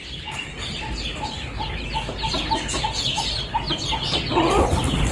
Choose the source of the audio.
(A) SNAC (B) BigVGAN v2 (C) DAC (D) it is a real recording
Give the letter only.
D